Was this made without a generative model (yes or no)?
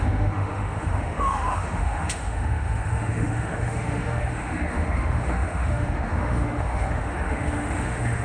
no